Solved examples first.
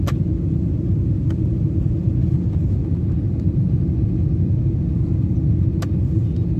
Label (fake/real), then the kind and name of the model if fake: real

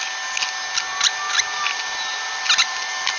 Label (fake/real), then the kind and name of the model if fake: real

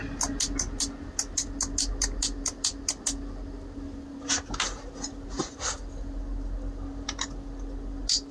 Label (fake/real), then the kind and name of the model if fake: real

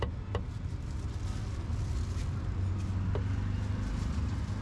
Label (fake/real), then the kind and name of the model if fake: real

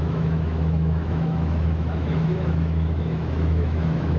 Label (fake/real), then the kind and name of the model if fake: fake, autoencoder, DAC-VAE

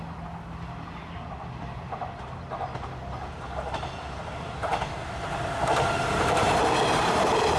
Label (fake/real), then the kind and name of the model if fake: real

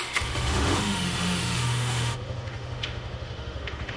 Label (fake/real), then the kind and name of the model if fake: fake, autoencoder, DAC-VAE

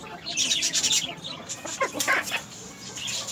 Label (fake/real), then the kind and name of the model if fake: real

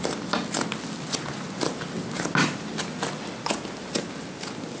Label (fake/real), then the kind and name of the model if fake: real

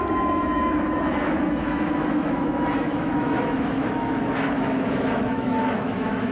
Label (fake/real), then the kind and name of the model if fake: fake, autoencoder, DAC-VAE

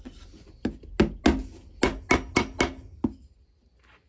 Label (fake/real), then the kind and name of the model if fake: real